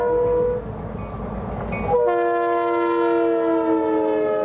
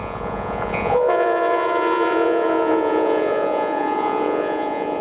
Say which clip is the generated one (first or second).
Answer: second